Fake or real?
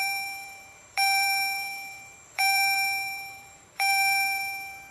fake